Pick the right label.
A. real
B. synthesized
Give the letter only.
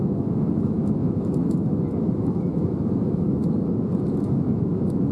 B